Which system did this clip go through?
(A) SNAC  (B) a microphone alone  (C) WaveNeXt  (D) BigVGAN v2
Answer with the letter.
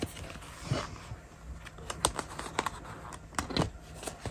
B